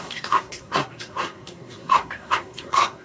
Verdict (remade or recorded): remade